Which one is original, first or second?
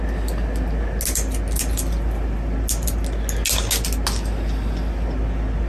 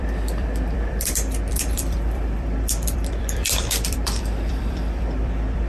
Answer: first